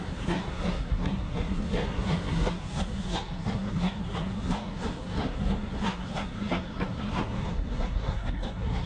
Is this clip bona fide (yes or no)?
no